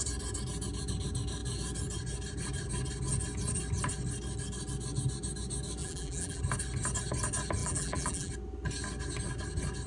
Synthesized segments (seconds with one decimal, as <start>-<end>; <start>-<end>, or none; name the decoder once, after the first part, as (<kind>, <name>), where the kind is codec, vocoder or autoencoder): 5.8-6.4 (vocoder, BigVGAN v2); 7.6-8.3